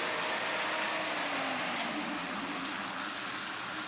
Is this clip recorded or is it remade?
recorded